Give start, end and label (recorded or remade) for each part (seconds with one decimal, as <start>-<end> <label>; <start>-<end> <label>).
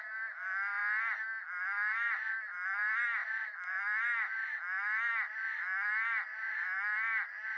0.0-0.8 remade; 0.8-1.4 recorded; 1.4-7.6 remade